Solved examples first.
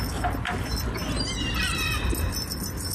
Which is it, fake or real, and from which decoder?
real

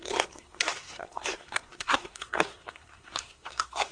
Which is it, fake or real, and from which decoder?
fake, codec, SNAC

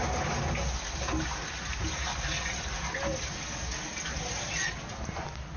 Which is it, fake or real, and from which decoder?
real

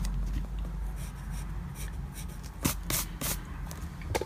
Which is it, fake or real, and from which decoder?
real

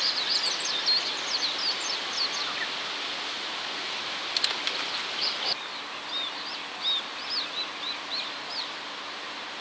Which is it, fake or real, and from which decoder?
real